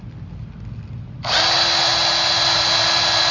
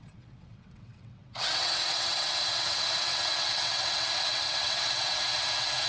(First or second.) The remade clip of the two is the second